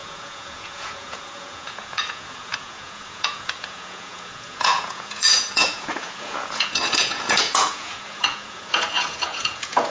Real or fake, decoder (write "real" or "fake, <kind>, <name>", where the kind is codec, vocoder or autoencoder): fake, vocoder, Vocos